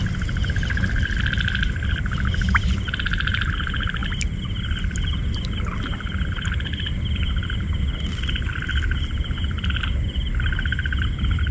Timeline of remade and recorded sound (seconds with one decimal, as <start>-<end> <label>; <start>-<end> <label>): 0.0-11.5 recorded